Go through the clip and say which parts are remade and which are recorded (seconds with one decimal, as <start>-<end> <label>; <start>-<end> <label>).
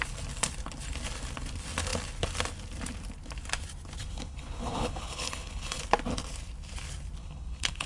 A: 0.0-4.0 recorded; 4.0-5.8 remade; 5.8-7.2 recorded; 7.2-7.9 remade